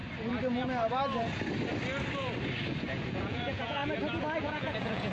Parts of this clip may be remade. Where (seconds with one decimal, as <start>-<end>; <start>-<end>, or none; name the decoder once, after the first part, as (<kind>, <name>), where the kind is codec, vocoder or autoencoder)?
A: 3.1-3.8 (vocoder, Vocos); 4.4-5.1